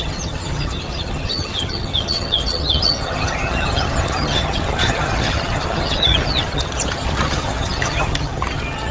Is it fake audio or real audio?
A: fake